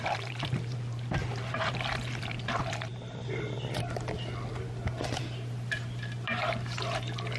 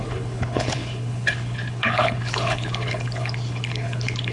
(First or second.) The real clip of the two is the first